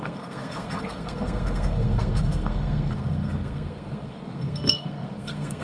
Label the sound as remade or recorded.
remade